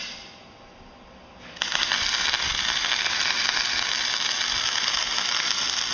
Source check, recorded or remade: recorded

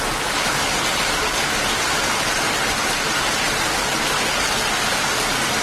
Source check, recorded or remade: recorded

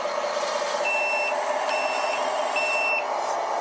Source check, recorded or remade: recorded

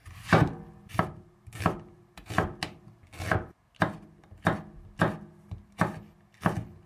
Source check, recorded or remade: recorded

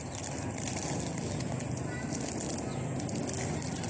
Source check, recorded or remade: recorded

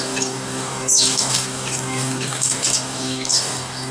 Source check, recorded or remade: remade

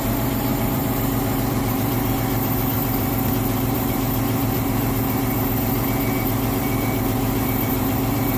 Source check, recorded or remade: remade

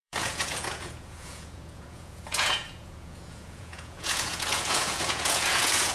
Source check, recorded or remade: remade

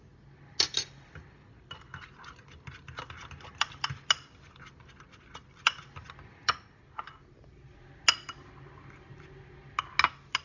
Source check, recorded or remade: recorded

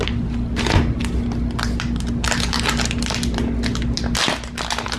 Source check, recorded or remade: recorded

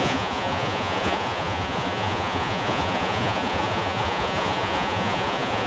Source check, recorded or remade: remade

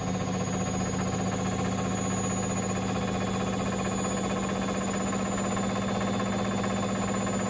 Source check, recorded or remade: recorded